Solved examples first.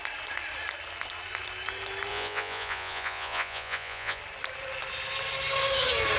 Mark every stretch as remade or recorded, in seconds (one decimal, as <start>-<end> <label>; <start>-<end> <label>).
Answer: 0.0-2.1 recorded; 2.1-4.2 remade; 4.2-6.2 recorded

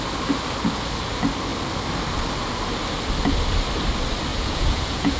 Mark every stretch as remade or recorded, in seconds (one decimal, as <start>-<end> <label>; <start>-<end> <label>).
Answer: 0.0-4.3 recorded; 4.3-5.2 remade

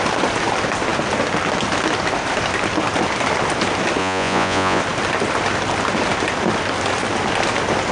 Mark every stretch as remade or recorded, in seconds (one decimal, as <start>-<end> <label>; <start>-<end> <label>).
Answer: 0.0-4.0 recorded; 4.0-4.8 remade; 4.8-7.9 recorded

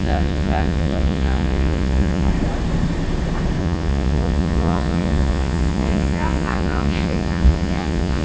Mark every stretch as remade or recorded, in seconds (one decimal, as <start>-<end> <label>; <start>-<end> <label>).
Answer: 0.0-2.3 remade; 2.3-3.6 recorded; 3.6-8.2 remade

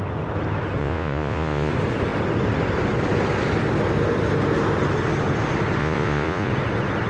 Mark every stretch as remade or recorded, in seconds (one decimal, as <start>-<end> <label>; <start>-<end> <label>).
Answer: 0.0-0.8 recorded; 0.8-1.7 remade; 1.7-5.8 recorded; 5.8-6.5 remade; 6.5-7.1 recorded

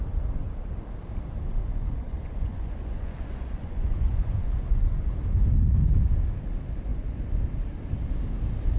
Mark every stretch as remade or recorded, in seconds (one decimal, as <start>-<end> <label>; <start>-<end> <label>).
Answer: 0.0-1.6 recorded; 1.6-5.1 remade; 5.1-6.9 recorded; 6.9-7.4 remade; 7.4-8.8 recorded

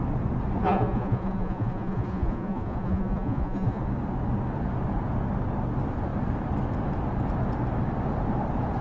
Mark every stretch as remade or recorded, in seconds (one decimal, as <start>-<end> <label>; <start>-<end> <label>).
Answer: 0.0-0.6 recorded; 0.6-3.8 remade; 3.8-8.8 recorded